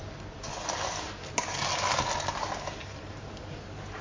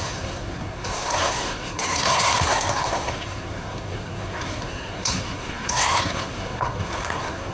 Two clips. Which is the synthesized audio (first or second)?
second